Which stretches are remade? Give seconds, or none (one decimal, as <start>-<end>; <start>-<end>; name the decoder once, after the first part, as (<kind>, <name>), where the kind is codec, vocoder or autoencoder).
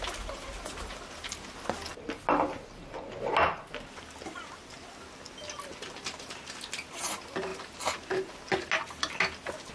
none